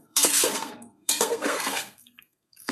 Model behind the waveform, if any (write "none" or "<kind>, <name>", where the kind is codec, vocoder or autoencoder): codec, SNAC